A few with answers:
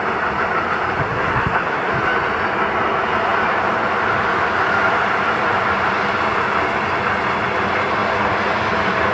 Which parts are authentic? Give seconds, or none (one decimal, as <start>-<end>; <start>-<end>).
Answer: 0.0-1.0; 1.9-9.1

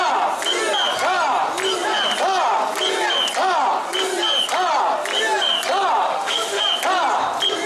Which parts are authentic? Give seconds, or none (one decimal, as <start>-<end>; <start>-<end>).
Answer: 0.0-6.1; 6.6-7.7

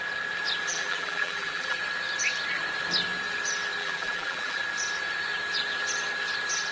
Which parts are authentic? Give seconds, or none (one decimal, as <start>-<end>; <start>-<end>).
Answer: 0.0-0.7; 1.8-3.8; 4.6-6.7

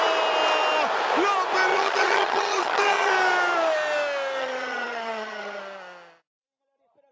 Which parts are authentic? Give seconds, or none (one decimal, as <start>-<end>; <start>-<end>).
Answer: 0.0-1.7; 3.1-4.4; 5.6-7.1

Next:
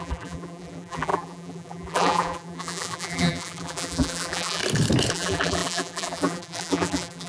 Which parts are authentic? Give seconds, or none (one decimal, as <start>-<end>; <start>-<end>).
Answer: 4.6-5.1

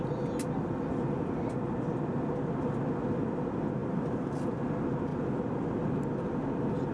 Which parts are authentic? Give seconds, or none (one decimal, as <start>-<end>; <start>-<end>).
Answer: 0.0-3.8; 4.3-6.9